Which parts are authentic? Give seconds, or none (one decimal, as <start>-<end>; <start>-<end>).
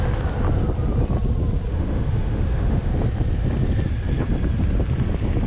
0.0-1.7; 2.9-5.5